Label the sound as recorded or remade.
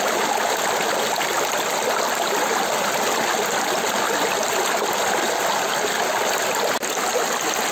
recorded